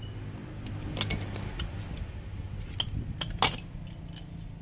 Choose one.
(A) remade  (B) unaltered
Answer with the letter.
B